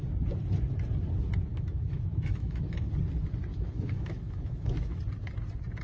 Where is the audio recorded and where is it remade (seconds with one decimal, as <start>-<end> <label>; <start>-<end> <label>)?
0.0-1.5 recorded; 1.5-2.9 remade; 2.9-3.5 recorded; 3.5-5.0 remade; 5.0-5.8 recorded